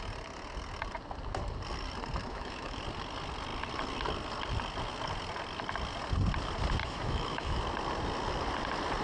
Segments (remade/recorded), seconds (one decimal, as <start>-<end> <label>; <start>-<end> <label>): 0.0-2.2 recorded; 2.2-2.8 remade; 2.8-6.8 recorded; 6.8-7.6 remade; 7.6-9.0 recorded